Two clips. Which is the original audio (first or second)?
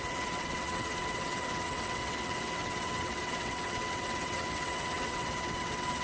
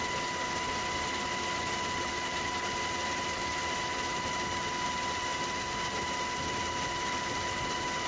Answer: second